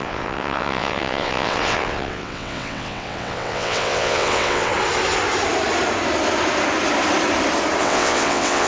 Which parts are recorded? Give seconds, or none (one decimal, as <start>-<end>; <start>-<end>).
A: 4.7-7.8

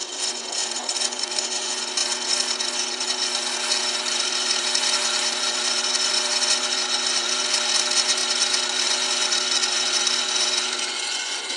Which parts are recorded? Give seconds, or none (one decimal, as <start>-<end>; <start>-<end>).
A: none

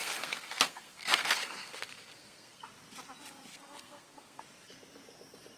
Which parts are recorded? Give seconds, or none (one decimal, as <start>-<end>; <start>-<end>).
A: 2.6-3.5; 4.4-5.6